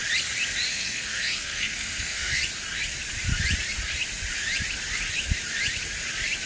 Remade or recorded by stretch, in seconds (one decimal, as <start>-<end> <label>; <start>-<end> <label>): 0.0-0.7 recorded; 0.7-2.4 remade; 2.4-6.5 recorded